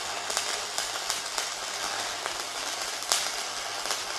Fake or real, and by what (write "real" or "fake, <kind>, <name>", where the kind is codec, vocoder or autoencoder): real